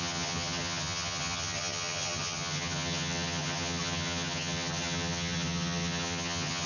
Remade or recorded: remade